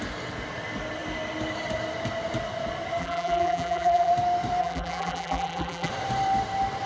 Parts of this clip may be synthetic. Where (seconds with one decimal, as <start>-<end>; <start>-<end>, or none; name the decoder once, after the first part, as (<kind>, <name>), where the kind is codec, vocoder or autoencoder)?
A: 3.0-4.1 (vocoder, BigVGAN v2); 4.6-5.9